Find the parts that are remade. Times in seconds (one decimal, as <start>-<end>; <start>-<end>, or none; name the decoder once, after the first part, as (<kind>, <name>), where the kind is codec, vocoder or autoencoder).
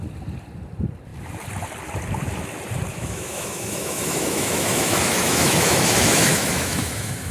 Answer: 2.9-7.3 (autoencoder, DAC-VAE)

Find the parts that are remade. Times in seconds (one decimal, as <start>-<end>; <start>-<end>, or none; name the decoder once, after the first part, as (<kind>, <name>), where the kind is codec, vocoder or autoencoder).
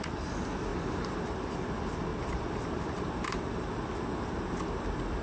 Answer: 0.7-1.5 (vocoder, BigVGAN v2); 2.1-3.9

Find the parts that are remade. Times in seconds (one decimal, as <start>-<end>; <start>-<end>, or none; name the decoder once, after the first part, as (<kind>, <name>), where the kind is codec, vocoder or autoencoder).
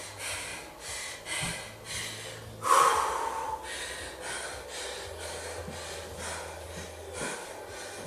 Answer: none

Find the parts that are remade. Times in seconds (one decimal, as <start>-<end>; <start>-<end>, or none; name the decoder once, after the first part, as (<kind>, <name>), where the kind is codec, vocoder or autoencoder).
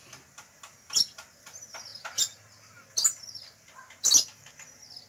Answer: none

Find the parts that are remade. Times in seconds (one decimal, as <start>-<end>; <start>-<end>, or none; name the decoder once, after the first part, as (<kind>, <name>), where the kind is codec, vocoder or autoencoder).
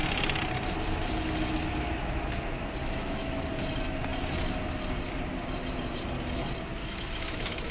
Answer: 2.8-3.5 (autoencoder, DAC-VAE); 6.8-7.7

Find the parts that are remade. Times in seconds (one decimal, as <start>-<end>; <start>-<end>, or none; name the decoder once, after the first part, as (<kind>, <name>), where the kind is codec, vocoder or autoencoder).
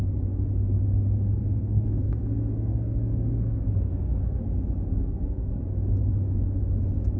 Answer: 1.4-4.4 (codec, SNAC); 4.9-5.5